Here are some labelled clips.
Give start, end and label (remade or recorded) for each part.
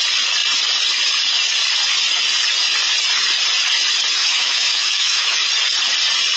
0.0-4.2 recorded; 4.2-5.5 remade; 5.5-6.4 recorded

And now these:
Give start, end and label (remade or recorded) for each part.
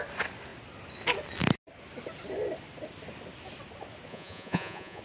0.0-4.1 recorded; 4.1-5.0 remade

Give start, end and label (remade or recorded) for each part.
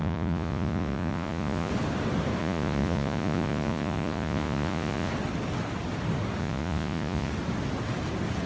0.0-1.7 remade; 1.7-2.4 recorded; 2.4-5.1 remade; 5.1-6.4 recorded; 6.4-7.3 remade; 7.3-8.5 recorded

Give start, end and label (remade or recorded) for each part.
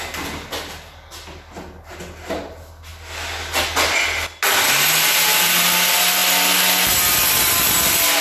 0.0-8.2 recorded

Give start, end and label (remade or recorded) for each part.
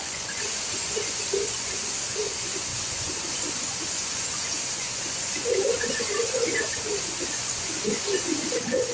0.0-8.9 remade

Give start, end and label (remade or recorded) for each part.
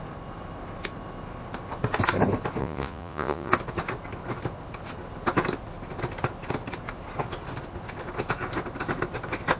0.0-2.6 recorded; 2.6-3.5 remade; 3.5-9.6 recorded